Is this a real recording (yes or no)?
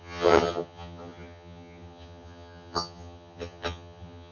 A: no